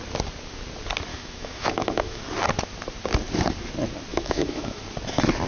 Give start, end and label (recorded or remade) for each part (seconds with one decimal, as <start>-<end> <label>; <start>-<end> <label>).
0.0-1.1 recorded; 1.1-2.2 remade; 2.2-4.1 recorded; 4.1-4.8 remade; 4.8-5.5 recorded